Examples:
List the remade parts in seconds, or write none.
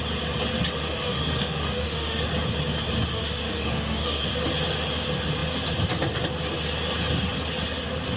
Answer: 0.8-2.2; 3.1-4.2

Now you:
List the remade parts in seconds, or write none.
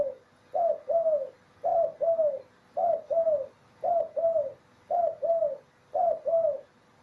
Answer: none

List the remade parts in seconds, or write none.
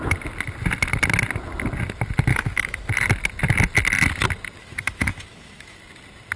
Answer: 2.3-2.9; 4.6-5.8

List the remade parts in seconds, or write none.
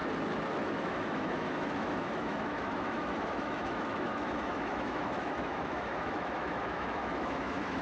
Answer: 0.6-7.8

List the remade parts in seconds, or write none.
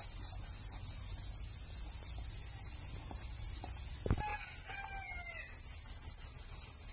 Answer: none